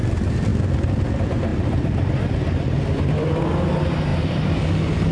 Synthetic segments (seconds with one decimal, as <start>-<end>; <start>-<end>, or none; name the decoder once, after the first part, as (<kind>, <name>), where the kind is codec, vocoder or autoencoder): 0.5-1.0 (vocoder, BigVGAN v2); 1.5-3.4; 4.1-5.1